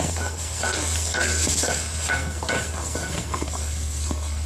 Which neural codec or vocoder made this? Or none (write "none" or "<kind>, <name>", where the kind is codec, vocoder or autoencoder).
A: codec, SNAC